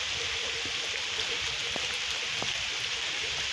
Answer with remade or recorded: recorded